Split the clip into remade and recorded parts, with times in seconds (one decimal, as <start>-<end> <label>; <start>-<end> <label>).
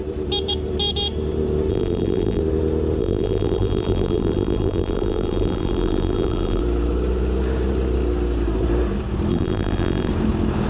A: 0.0-1.7 recorded; 1.7-2.4 remade; 2.4-3.0 recorded; 3.0-6.6 remade; 6.6-9.3 recorded; 9.3-10.1 remade; 10.1-10.7 recorded